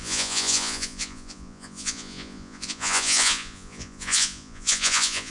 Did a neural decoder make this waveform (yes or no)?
yes